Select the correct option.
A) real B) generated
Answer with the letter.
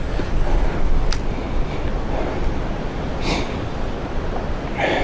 A